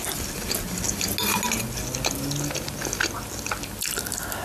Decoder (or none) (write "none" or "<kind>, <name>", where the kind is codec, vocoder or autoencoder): none